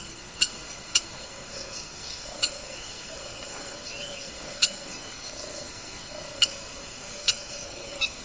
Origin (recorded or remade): remade